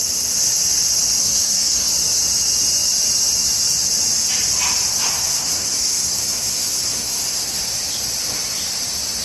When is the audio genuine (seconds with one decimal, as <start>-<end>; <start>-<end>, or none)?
0.0-1.2; 1.9-4.9; 7.6-9.2